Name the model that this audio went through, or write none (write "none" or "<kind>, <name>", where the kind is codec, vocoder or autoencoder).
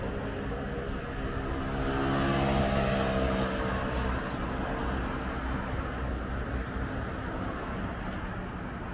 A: none